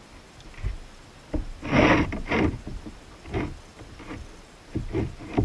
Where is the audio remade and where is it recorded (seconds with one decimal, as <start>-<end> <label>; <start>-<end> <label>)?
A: 0.0-5.4 recorded

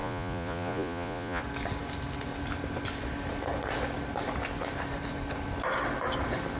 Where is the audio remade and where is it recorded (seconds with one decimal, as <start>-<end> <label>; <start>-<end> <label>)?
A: 0.0-1.4 remade; 1.4-6.6 recorded

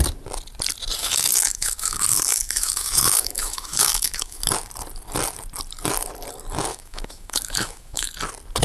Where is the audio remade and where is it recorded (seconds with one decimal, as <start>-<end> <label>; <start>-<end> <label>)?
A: 0.0-1.0 recorded; 1.0-4.4 remade; 4.4-6.7 recorded; 6.7-8.1 remade; 8.1-8.6 recorded

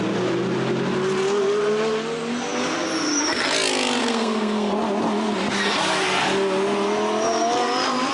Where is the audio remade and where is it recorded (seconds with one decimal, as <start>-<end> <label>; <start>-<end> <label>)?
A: 0.0-4.0 recorded; 4.0-4.7 remade; 4.7-8.1 recorded

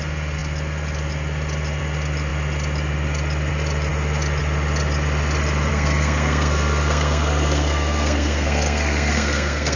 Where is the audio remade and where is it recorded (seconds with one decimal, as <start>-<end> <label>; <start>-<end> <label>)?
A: 0.0-5.7 recorded; 5.7-9.8 remade

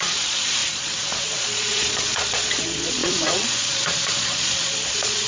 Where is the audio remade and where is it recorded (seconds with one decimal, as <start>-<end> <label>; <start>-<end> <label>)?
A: 0.0-5.3 remade

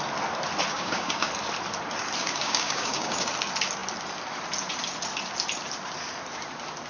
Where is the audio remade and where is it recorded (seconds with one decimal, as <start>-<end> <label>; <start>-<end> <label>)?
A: 0.0-0.7 recorded; 0.7-1.3 remade; 1.3-2.2 recorded; 2.2-3.3 remade; 3.3-6.9 recorded

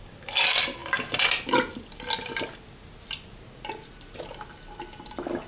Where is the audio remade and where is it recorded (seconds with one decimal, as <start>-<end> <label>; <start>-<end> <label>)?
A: 0.0-5.5 recorded